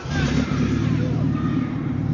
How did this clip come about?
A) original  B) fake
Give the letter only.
A